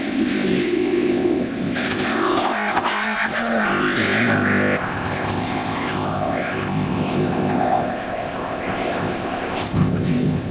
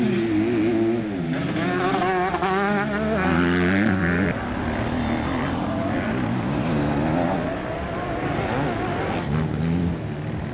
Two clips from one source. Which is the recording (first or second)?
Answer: second